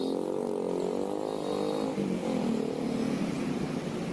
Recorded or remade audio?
recorded